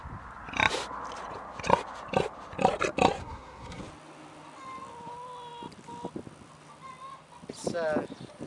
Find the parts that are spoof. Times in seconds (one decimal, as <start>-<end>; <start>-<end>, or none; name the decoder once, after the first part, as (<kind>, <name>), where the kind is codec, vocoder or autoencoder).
3.2-3.8 (codec, SNAC)